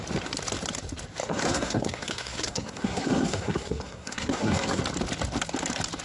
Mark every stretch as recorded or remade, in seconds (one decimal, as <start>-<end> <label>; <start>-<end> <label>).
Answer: 0.0-1.2 recorded; 1.2-4.8 remade; 4.8-6.0 recorded

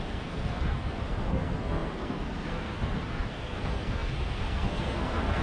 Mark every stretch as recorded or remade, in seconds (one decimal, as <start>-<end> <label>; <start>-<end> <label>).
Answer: 0.0-5.4 remade

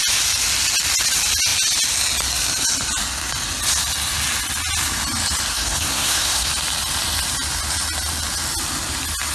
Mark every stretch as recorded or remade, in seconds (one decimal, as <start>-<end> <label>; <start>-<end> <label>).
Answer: 0.0-5.5 recorded; 5.5-6.5 remade; 6.5-9.3 recorded

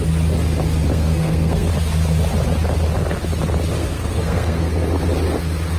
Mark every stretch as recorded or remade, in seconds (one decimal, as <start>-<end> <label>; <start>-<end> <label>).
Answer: 0.0-0.9 recorded; 0.9-1.7 remade; 1.7-3.8 recorded; 3.8-4.7 remade; 4.7-5.8 recorded

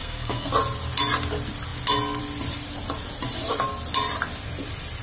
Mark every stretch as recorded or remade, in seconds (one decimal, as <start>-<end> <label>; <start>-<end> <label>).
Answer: 0.0-0.5 remade; 0.5-5.0 recorded

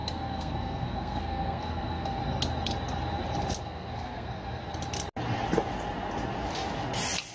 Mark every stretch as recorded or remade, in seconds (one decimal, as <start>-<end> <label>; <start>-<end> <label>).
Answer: 0.0-2.2 remade; 2.2-3.6 recorded; 3.6-4.6 remade; 4.6-7.3 recorded

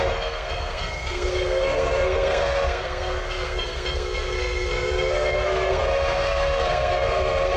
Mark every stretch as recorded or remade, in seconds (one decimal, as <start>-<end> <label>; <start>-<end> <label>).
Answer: 0.0-7.6 remade

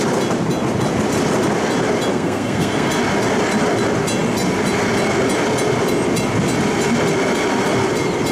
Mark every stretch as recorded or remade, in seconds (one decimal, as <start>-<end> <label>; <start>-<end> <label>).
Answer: 0.0-2.1 recorded; 2.1-2.9 remade; 2.9-8.3 recorded